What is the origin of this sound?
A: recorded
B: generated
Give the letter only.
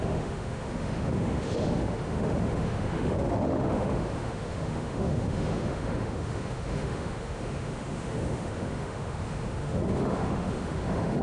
B